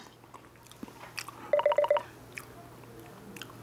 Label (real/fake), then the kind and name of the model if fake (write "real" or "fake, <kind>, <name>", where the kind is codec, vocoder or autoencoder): real